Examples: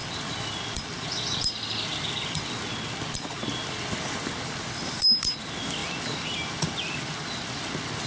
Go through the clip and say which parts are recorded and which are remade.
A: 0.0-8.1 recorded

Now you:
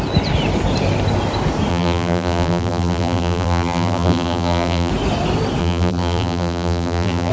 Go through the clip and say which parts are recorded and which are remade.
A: 0.0-1.7 recorded; 1.7-4.9 remade; 4.9-5.6 recorded; 5.6-7.3 remade

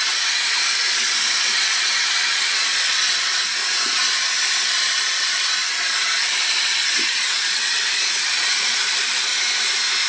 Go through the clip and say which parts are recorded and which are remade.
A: 0.0-3.6 remade; 3.6-4.5 recorded; 4.5-9.3 remade; 9.3-10.1 recorded